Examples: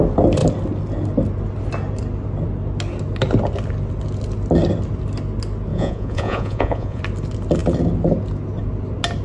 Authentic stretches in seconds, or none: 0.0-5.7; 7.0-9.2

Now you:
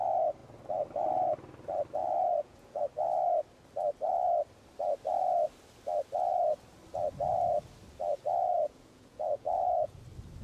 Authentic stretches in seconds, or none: 0.0-2.0; 2.8-8.4; 10.0-10.4

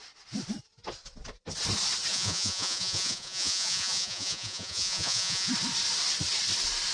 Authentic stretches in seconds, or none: 0.0-2.1; 5.5-6.9

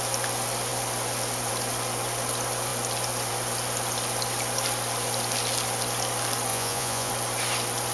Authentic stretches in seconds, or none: 0.0-6.5; 7.1-7.9